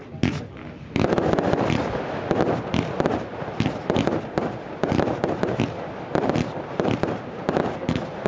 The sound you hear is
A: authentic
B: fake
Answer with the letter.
A